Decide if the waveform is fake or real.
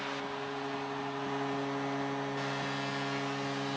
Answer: real